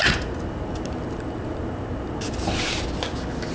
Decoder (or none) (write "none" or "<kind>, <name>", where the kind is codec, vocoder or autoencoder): none